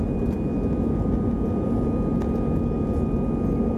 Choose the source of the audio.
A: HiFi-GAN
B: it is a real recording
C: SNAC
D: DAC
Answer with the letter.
B